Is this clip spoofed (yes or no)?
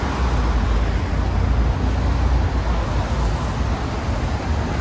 no